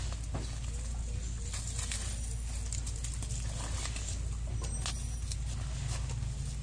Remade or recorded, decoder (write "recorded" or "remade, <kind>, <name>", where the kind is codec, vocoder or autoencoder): recorded